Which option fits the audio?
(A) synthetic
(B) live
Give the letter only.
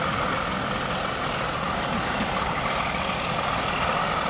B